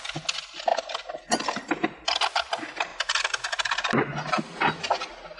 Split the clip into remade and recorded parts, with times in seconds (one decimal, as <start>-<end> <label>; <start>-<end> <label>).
0.0-5.4 recorded